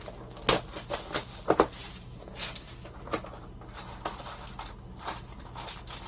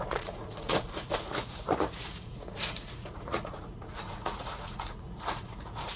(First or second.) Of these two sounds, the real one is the first